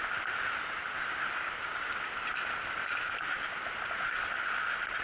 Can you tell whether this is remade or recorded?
recorded